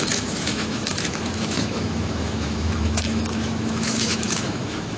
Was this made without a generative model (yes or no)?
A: no